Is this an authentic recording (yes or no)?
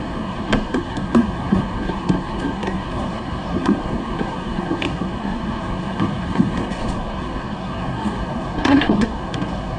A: no